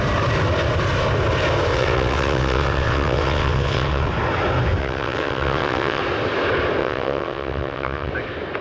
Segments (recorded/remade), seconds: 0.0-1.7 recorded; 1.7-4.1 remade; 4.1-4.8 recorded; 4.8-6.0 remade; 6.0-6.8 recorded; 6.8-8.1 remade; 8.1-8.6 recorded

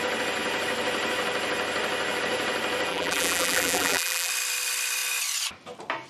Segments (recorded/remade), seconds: 0.0-2.9 recorded; 2.9-4.3 remade; 4.3-6.1 recorded

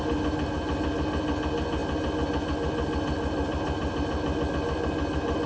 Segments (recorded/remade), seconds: 0.0-5.5 recorded